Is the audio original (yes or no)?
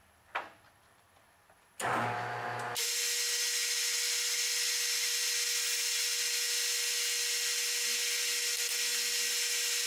yes